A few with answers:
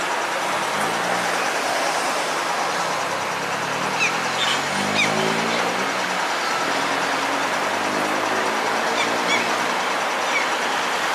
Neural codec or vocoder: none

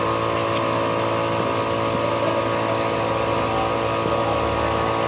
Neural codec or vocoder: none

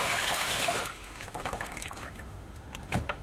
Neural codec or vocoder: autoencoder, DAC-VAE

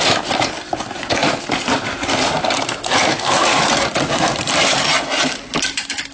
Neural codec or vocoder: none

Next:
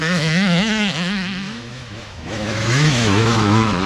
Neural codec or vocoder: autoencoder, DAC-VAE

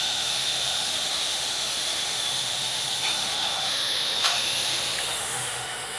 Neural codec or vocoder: autoencoder, DAC-VAE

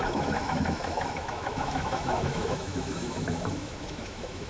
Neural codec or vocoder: autoencoder, DAC-VAE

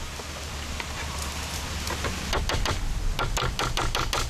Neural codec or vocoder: none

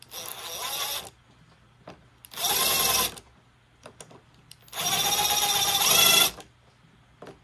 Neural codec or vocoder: none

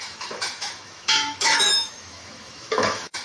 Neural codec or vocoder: autoencoder, DAC-VAE